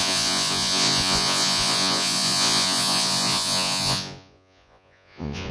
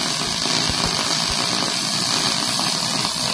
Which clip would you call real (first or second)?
second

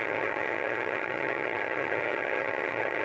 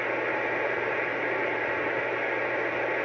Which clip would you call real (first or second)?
second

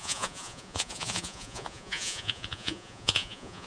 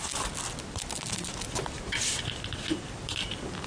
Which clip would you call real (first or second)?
second